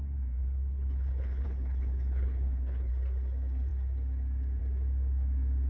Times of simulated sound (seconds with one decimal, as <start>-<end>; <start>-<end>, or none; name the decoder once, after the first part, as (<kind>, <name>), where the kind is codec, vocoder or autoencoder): 0.4-2.9 (codec, HILCodec)

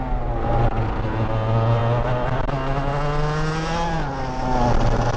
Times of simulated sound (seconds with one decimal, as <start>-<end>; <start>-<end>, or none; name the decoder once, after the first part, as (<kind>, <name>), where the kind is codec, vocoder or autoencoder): none

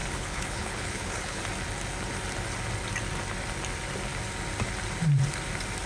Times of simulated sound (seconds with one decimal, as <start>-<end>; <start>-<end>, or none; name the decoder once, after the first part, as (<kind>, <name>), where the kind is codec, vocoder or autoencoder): 0.0-1.4 (codec, HILCodec)